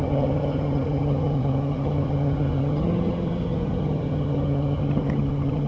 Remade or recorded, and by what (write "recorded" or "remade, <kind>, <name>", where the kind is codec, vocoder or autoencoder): remade, vocoder, HiFi-GAN